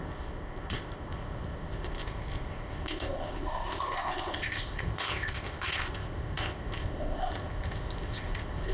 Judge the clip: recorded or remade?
remade